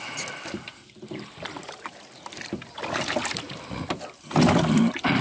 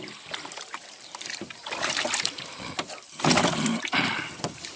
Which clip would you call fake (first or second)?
second